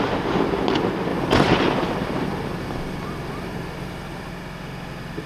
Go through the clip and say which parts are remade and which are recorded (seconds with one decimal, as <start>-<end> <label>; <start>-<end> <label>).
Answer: 0.0-1.1 recorded; 1.1-4.3 remade; 4.3-5.3 recorded

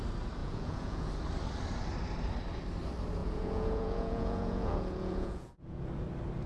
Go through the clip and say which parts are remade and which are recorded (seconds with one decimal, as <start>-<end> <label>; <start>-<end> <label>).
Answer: 0.0-0.4 recorded; 0.4-1.1 remade; 1.1-3.2 recorded; 3.2-5.9 remade; 5.9-6.5 recorded